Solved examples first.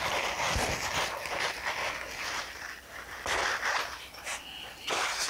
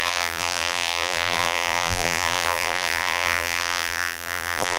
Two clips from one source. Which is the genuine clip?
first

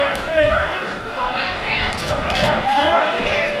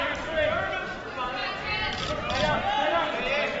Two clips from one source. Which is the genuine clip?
second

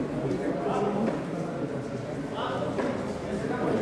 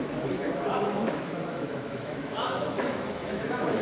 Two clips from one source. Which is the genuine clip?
first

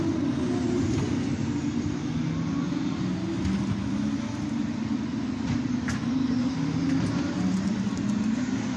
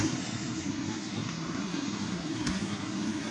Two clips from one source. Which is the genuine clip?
first